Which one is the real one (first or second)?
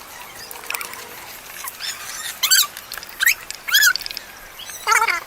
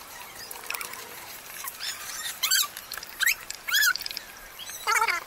first